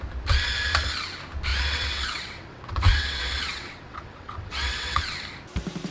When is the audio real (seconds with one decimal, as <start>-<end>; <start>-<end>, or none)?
0.0-1.5; 5.0-5.9